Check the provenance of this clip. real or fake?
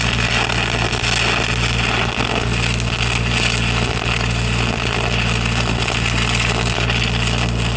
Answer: real